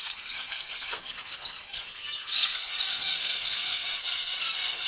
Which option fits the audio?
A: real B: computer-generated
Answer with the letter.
B